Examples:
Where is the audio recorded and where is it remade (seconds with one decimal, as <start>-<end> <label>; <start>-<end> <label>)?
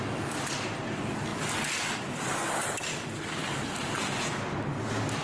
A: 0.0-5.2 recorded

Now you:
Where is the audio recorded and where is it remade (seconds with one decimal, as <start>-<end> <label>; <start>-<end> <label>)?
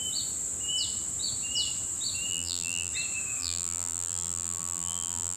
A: 0.0-2.3 recorded; 2.3-2.9 remade; 2.9-3.4 recorded; 3.4-5.4 remade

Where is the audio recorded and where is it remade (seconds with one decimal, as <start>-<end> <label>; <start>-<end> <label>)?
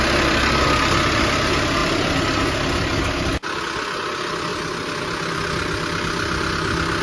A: 0.0-7.0 recorded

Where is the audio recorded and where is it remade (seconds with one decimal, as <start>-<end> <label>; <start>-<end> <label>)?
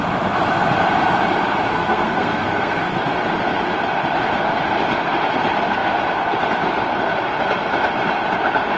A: 0.0-1.7 recorded; 1.7-3.0 remade; 3.0-8.8 recorded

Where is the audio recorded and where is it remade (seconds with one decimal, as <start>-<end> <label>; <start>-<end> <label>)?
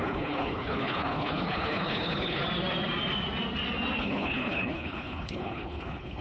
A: 0.0-2.4 remade; 2.4-4.0 recorded; 4.0-6.2 remade